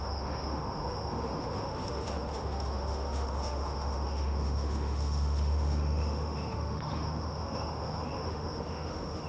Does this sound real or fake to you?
fake